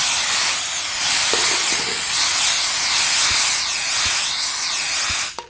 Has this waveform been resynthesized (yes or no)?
no